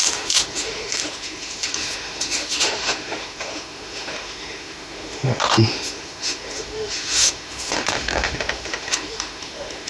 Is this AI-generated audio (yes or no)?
yes